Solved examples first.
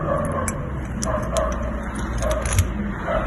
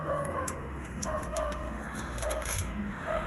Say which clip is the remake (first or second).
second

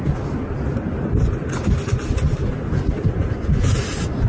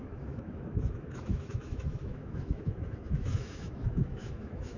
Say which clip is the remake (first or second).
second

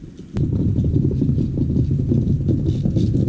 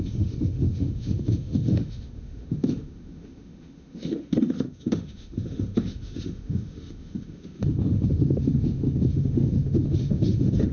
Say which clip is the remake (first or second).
second